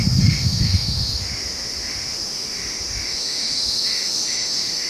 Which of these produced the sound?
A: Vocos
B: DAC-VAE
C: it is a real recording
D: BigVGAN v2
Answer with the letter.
B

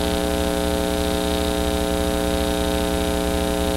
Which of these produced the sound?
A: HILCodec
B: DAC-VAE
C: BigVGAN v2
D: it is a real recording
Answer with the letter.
D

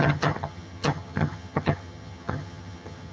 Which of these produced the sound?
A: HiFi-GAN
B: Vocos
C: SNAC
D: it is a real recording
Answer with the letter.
A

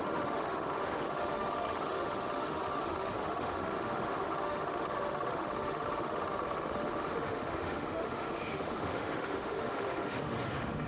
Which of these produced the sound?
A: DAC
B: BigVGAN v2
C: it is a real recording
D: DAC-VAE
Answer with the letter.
D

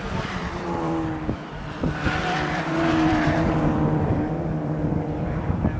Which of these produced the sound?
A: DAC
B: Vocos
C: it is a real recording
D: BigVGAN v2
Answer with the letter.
D